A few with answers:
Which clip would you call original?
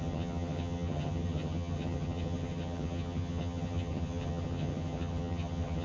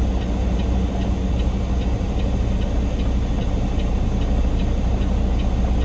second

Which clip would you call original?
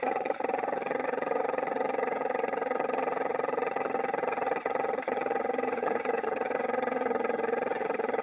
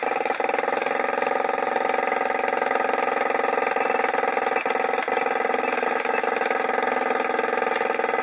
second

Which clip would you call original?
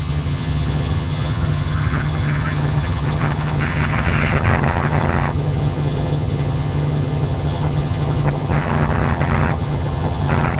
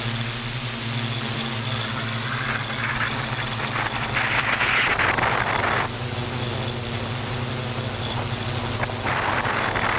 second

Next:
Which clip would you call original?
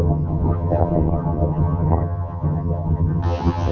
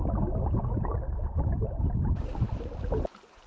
second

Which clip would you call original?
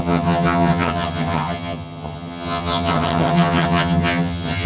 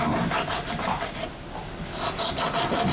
second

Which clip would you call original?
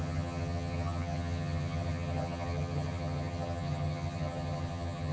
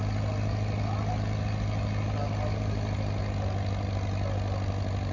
second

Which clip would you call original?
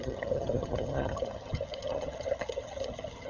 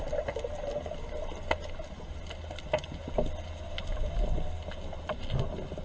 second